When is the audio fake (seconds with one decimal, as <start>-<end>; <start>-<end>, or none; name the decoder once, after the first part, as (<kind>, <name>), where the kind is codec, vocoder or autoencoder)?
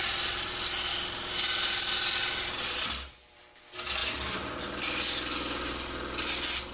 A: 0.0-0.5 (vocoder, BigVGAN v2); 0.9-3.6